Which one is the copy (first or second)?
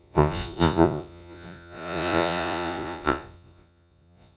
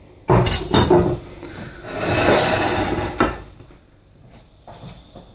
first